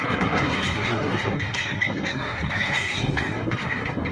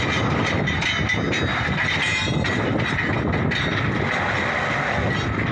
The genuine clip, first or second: second